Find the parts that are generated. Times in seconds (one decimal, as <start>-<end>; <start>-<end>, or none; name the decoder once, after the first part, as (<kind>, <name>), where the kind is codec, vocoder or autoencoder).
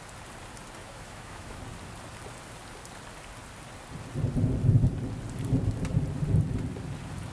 0.8-1.6 (autoencoder, DAC-VAE)